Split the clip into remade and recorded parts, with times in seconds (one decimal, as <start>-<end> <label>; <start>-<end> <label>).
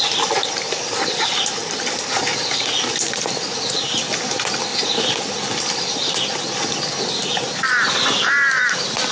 0.0-9.1 recorded